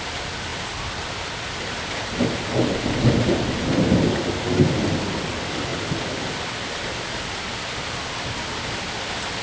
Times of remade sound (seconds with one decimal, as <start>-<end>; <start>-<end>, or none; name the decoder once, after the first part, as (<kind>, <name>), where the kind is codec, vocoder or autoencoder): none